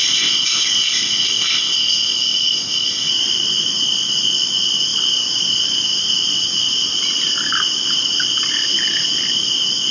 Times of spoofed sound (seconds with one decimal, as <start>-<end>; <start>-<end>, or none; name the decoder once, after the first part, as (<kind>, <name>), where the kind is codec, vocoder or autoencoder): 0.0-3.1 (codec, ZipCodec)